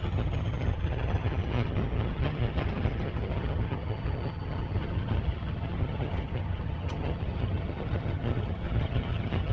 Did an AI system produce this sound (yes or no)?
yes